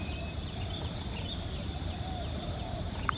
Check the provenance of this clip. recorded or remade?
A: remade